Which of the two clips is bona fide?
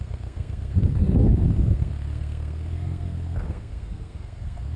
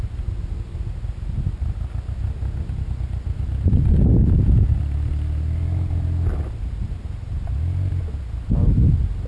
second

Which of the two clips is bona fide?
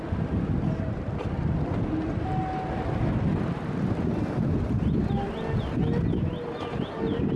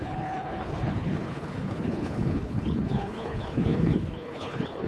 first